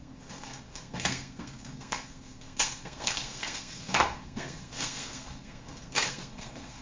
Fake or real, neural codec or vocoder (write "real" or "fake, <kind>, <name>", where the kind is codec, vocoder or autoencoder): fake, codec, SNAC